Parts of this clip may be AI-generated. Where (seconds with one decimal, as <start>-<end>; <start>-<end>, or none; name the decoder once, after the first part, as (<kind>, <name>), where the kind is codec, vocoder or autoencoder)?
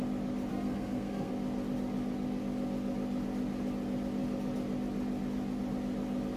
0.5-1.3 (codec, SNAC)